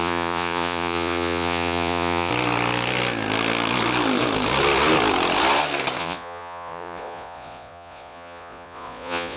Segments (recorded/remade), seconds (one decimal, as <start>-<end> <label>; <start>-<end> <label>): 0.0-2.3 remade; 2.3-6.0 recorded; 6.0-9.4 remade